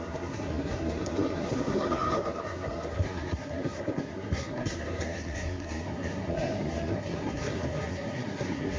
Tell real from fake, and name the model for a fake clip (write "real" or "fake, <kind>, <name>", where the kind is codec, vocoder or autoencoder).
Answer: fake, codec, SNAC